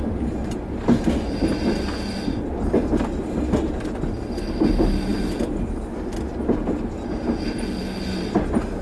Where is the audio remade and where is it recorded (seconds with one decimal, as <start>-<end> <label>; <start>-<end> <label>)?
0.0-8.8 recorded